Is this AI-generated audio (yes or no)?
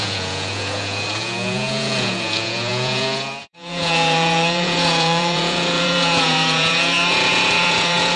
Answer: yes